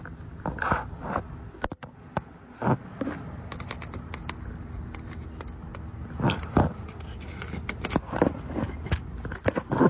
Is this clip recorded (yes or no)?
yes